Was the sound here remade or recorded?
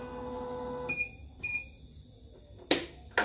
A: recorded